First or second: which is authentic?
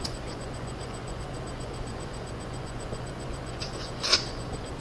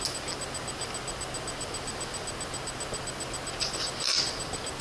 second